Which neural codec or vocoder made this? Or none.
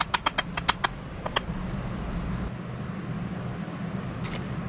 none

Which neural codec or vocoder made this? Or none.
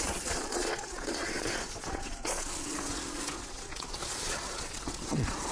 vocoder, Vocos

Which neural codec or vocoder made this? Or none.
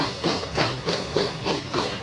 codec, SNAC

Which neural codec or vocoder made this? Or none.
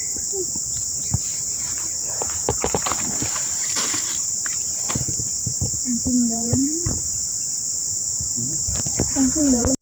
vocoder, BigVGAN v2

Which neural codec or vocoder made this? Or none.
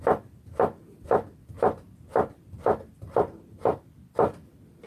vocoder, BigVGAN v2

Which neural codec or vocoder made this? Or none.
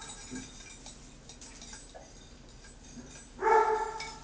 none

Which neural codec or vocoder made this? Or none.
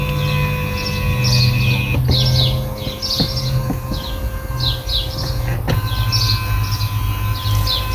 none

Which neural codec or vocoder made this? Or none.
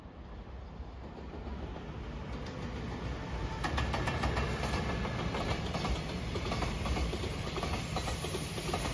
none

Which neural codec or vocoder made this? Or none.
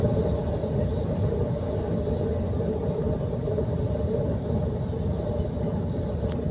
none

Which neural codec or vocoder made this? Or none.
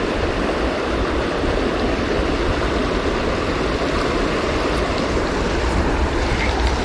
vocoder, BigVGAN v2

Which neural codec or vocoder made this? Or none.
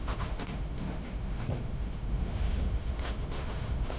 autoencoder, DAC-VAE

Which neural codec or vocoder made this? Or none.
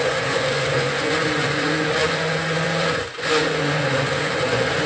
vocoder, Vocos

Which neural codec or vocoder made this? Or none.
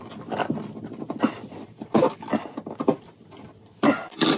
none